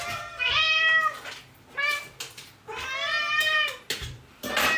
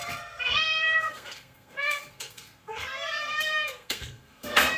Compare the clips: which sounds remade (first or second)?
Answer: second